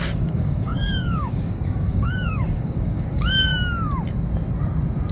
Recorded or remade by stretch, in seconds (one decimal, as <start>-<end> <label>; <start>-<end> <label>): 0.0-3.5 remade; 3.5-5.1 recorded